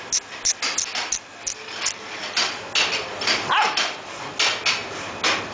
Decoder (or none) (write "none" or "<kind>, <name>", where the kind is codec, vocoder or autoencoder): none